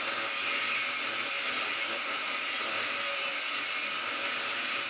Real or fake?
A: real